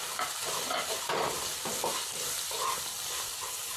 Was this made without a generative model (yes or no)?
yes